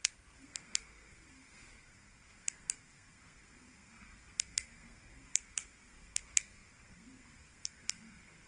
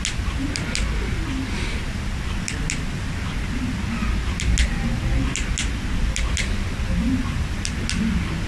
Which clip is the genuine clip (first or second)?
second